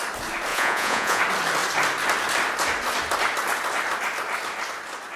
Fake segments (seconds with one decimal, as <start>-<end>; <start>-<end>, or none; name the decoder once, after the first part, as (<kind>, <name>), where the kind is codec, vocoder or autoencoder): 0.5-1.2 (vocoder, Vocos)